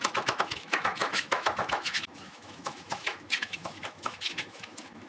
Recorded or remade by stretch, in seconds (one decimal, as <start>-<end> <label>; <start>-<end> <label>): 0.0-5.1 remade